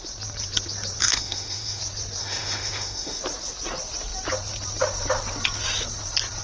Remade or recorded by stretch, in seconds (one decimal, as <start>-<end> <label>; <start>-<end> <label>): 0.0-1.0 recorded; 1.0-1.8 remade; 1.8-2.2 recorded; 2.2-3.2 remade; 3.2-6.4 recorded